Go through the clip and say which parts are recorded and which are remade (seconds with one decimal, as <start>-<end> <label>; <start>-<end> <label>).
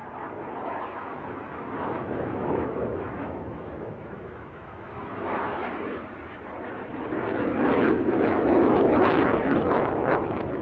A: 0.0-0.7 recorded; 0.7-5.6 remade; 5.6-7.8 recorded; 7.8-10.6 remade